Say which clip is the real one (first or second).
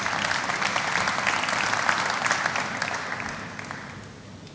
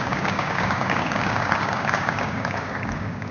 first